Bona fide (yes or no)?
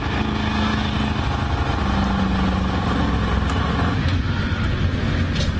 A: yes